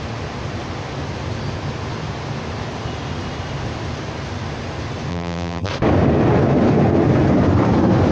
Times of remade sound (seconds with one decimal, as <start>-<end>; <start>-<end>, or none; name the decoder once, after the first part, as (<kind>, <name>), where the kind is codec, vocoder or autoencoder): 5.1-5.7 (vocoder, BigVGAN v2)